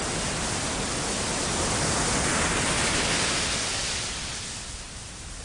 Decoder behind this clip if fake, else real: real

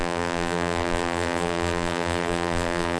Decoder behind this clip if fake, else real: fake, vocoder, BigVGAN v2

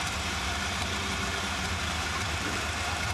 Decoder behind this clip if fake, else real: fake, vocoder, BigVGAN v2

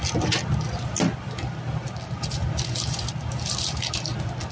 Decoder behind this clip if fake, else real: real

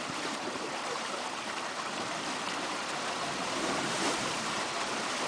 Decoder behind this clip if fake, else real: fake, vocoder, BigVGAN v2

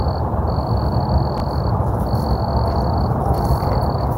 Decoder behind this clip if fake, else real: real